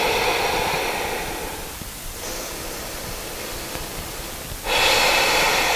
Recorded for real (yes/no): yes